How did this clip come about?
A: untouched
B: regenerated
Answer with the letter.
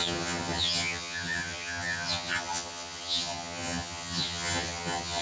B